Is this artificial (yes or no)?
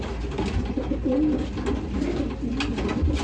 no